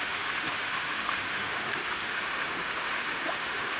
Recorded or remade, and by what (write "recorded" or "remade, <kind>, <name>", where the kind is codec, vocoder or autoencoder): remade, autoencoder, DAC-VAE